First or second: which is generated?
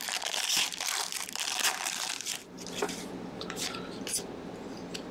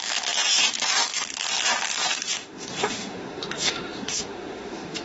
second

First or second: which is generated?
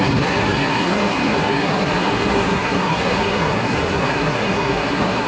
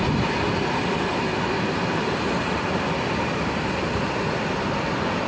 first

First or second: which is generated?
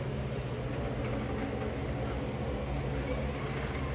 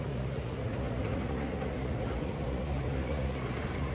second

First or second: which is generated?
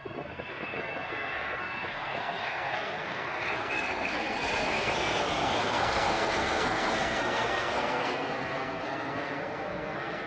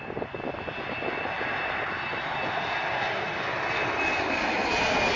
first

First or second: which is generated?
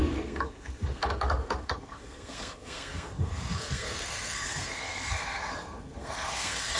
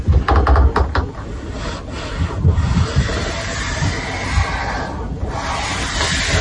first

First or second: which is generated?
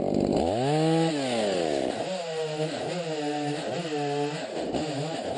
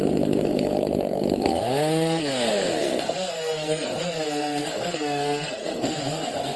second